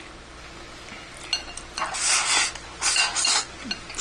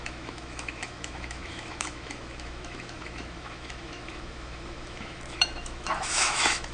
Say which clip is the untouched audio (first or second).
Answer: first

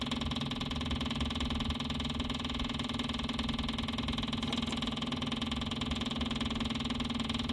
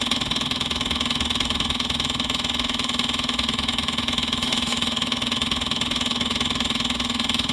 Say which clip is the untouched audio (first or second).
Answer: first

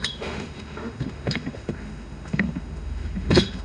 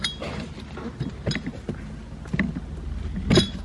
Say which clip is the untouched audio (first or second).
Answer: second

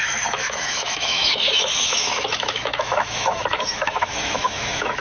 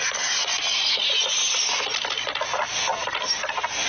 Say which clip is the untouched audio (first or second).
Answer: second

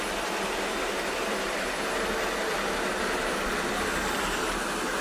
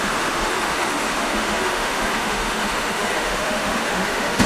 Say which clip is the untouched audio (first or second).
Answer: first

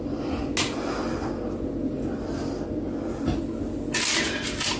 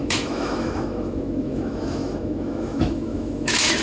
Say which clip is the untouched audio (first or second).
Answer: first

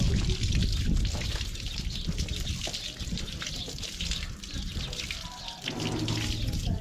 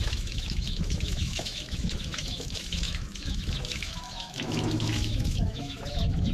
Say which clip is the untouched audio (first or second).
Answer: first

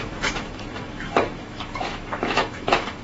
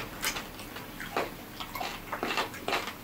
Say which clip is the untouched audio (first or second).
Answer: second